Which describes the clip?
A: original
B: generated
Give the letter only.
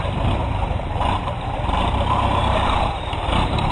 B